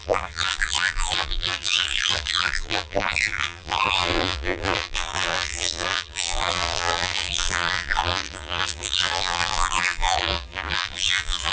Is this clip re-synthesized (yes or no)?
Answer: yes